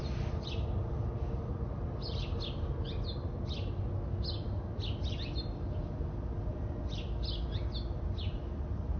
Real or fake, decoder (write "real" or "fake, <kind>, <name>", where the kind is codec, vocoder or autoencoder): real